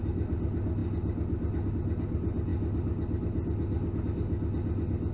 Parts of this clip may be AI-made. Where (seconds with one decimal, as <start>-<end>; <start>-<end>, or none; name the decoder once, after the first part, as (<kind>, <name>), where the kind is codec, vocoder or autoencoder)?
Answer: none